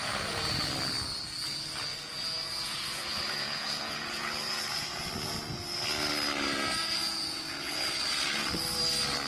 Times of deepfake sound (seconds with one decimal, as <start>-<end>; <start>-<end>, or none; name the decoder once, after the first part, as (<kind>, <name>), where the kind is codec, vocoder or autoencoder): 0.0-0.6 (vocoder, Vocos); 1.9-5.1; 6.8-8.5